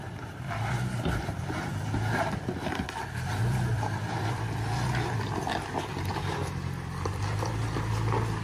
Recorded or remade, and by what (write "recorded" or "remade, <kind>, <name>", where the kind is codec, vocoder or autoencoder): remade, vocoder, BigVGAN v2